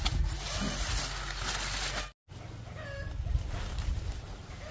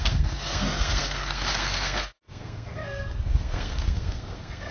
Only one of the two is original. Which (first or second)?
first